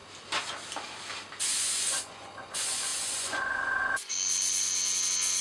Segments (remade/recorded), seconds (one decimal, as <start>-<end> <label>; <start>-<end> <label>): 0.0-1.4 recorded; 1.4-4.7 remade; 4.7-5.4 recorded

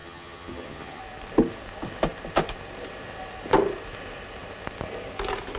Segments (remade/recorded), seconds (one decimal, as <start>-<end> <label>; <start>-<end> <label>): 0.0-1.0 remade; 1.0-5.6 recorded

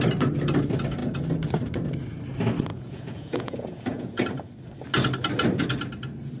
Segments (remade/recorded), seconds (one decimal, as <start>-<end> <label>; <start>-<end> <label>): 0.0-2.7 recorded; 2.7-4.2 remade; 4.2-6.4 recorded

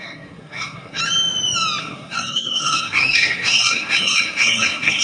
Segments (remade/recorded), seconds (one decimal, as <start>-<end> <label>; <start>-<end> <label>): 0.0-1.0 remade; 1.0-1.8 recorded; 1.8-5.0 remade

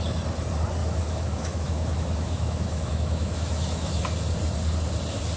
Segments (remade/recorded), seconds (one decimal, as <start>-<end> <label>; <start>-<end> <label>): 0.0-0.8 recorded; 0.8-4.0 remade; 4.0-5.4 recorded

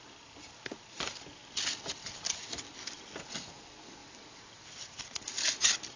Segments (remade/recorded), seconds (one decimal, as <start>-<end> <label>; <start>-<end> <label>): 0.0-6.0 recorded